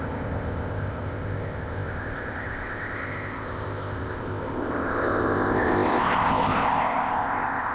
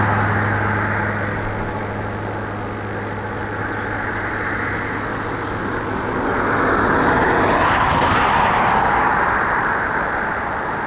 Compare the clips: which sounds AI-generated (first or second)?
first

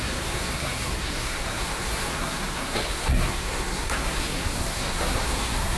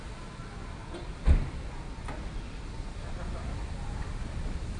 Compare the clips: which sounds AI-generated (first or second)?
first